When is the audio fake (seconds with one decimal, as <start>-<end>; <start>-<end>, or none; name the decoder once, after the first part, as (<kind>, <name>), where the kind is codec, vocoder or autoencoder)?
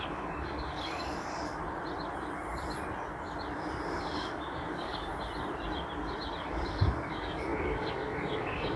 0.0-1.6 (codec, DAC); 4.0-5.1; 6.5-8.8